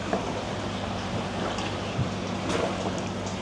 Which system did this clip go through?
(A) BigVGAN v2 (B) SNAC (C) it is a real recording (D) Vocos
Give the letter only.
C